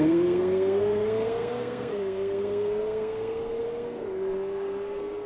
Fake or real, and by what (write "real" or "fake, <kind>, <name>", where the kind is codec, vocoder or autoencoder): fake, codec, SNAC